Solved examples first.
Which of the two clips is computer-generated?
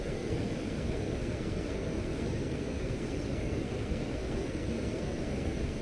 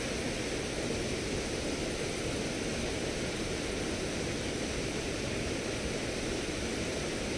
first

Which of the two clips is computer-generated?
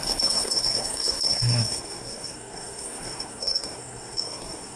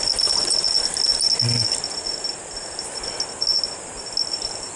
first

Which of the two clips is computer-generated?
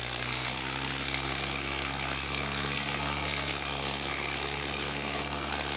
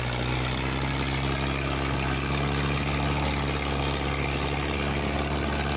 first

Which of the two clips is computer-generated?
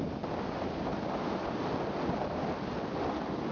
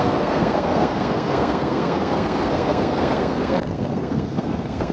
second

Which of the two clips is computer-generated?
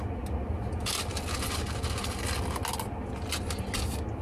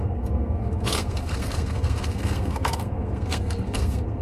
second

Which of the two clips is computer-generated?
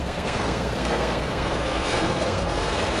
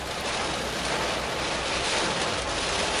first